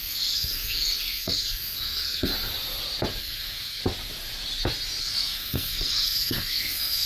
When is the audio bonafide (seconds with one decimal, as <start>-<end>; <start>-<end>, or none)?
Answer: 2.3-3.2; 3.8-5.0